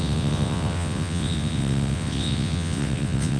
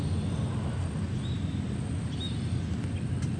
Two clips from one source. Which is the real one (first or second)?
second